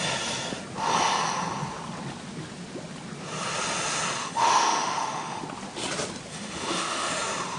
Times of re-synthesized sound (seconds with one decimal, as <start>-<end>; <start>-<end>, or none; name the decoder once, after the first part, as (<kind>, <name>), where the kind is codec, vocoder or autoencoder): 4.2-5.4 (autoencoder, DAC-VAE); 6.3-7.1